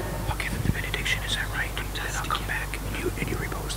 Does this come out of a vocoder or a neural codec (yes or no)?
yes